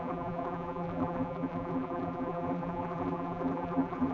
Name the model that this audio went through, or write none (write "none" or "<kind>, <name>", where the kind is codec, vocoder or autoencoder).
vocoder, BigVGAN v2